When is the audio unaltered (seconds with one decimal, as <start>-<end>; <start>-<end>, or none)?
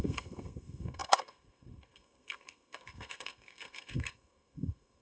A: none